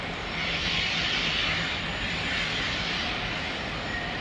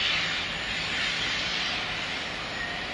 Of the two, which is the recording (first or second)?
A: second